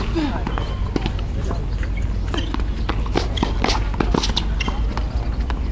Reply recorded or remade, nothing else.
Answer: recorded